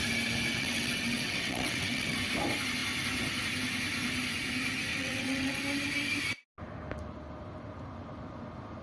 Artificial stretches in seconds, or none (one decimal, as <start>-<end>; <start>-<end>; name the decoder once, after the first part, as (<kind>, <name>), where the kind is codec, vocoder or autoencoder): 0.5-2.2 (vocoder, WaveNeXt); 4.9-5.6